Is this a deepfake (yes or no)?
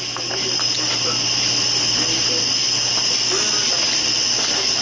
no